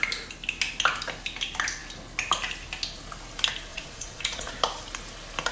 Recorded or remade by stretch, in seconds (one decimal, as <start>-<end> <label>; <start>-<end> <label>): 0.0-3.7 recorded; 3.7-4.5 remade; 4.5-5.5 recorded